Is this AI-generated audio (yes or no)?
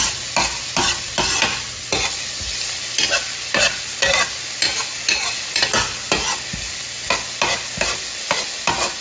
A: no